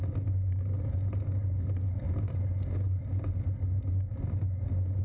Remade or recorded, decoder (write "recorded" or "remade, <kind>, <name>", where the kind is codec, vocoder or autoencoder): recorded